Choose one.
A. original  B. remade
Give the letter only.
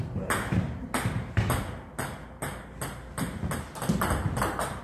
A